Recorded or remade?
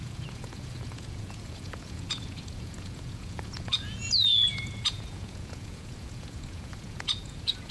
remade